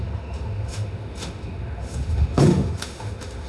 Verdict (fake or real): fake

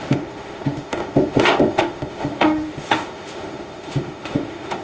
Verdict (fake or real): fake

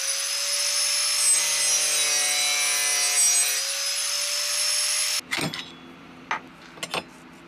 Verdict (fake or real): real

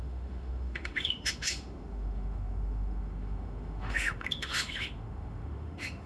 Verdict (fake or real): fake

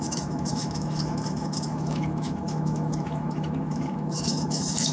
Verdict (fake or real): fake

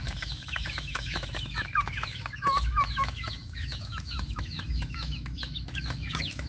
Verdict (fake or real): fake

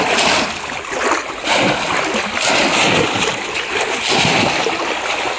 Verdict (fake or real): real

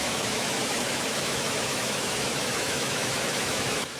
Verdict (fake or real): fake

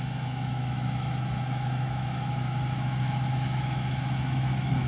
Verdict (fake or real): fake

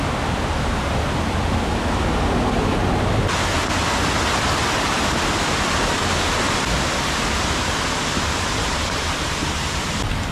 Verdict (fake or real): real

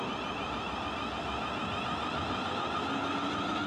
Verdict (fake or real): real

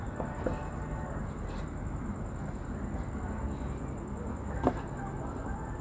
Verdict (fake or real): real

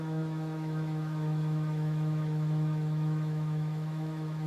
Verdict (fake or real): fake